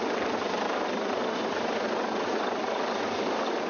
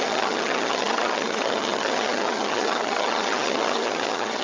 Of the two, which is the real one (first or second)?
first